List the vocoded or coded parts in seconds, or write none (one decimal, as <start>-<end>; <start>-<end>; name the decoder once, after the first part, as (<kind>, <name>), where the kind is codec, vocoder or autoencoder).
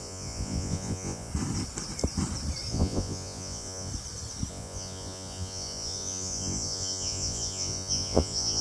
0.0-1.3 (vocoder, Vocos); 2.7-3.9; 4.5-8.6